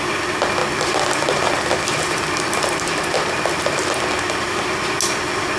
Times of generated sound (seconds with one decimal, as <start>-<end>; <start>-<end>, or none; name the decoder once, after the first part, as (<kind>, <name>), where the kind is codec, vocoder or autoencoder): 0.6-4.0 (vocoder, BigVGAN v2)